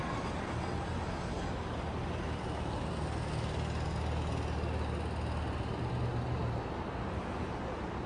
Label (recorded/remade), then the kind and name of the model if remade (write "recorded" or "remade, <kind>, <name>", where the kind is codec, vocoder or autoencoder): recorded